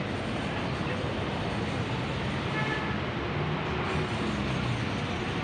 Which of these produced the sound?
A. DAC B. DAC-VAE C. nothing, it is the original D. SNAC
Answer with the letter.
C